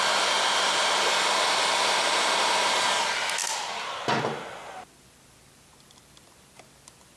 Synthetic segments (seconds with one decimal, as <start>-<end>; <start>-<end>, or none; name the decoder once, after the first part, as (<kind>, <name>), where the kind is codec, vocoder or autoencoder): 0.0-3.4 (vocoder, BigVGAN v2); 4.2-7.2